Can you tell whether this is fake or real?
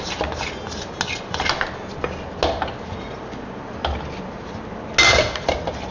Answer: real